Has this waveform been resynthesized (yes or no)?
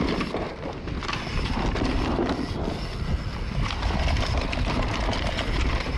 no